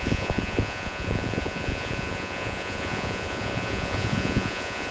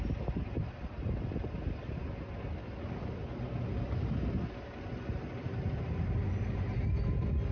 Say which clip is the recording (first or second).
second